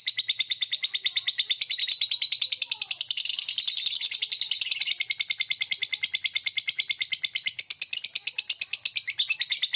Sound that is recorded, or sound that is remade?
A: recorded